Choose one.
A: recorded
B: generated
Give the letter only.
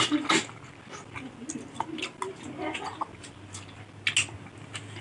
A